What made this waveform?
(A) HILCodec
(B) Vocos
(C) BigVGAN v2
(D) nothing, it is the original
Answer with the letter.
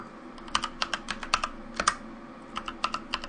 D